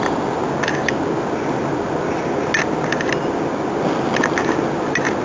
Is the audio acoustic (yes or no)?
yes